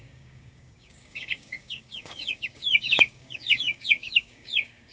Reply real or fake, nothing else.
fake